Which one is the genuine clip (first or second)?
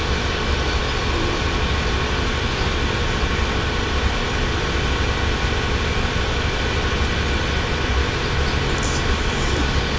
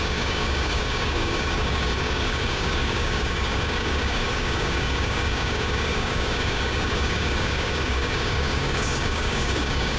first